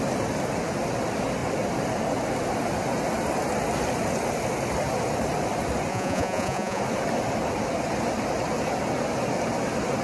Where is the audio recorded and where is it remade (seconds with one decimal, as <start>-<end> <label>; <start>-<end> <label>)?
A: 0.0-5.9 recorded; 5.9-6.8 remade; 6.8-10.0 recorded